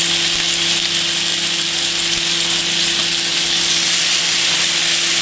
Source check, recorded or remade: recorded